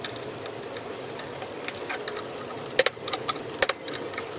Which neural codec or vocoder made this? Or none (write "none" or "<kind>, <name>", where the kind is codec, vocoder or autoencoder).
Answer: none